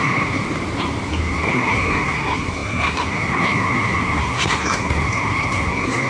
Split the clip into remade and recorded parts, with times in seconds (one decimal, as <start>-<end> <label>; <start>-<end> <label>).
0.0-0.4 remade; 0.4-1.1 recorded; 1.1-6.1 remade